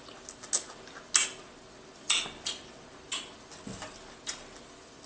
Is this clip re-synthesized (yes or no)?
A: no